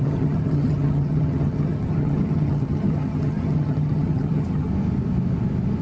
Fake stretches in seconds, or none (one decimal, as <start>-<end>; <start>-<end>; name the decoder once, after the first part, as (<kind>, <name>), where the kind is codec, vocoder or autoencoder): 0.0-4.7 (vocoder, HiFi-GAN)